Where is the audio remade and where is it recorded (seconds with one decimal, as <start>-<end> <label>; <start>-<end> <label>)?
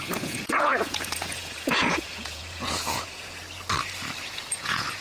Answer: 0.0-3.4 remade; 3.4-4.2 recorded; 4.2-5.0 remade